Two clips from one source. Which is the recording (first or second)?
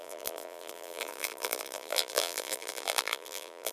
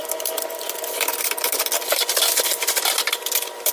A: second